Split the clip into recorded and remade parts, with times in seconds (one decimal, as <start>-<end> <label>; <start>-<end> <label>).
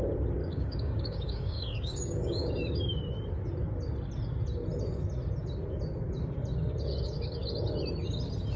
0.0-0.4 recorded; 0.4-2.5 remade; 2.5-8.6 recorded